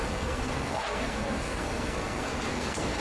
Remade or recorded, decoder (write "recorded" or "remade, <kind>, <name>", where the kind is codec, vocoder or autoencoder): remade, codec, SNAC